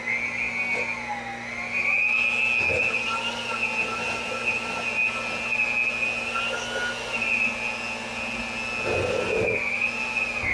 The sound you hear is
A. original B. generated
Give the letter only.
A